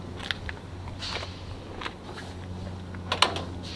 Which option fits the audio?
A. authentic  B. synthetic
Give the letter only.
A